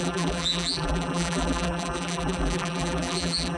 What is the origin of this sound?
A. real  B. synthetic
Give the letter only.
B